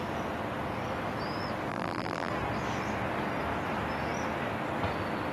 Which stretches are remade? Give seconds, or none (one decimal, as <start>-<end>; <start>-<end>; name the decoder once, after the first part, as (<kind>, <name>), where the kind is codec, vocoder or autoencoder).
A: 1.7-2.3 (vocoder, BigVGAN v2)